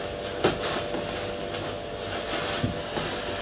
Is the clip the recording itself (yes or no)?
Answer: yes